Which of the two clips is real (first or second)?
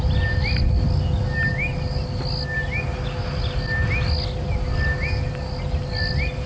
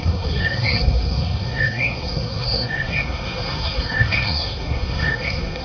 first